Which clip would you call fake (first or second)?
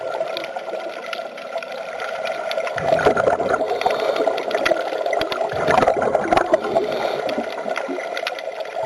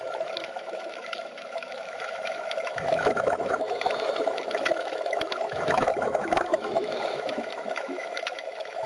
second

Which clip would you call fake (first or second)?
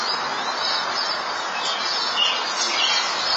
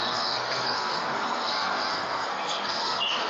second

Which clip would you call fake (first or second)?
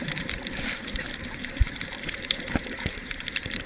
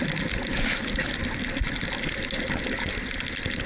first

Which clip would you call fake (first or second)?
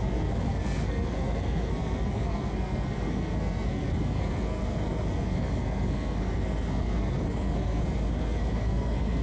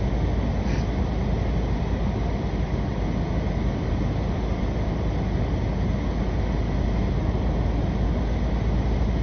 first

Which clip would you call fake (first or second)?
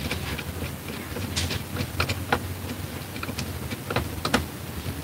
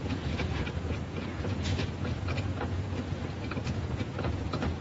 second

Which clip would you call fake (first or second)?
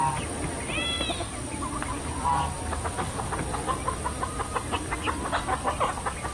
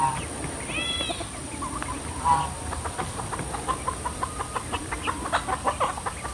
second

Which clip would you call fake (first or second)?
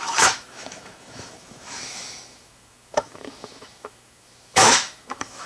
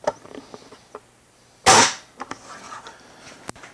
first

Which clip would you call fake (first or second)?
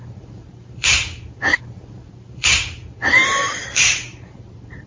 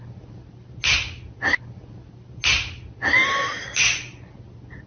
first